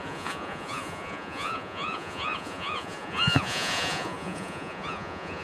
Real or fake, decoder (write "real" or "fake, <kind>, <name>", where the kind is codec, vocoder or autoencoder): fake, vocoder, Vocos